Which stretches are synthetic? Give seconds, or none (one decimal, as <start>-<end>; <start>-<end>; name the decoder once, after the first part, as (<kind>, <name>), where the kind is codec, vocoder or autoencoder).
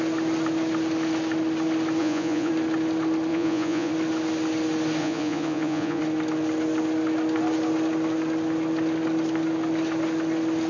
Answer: 2.0-2.5 (vocoder, Vocos); 3.3-3.9; 5.0-6.0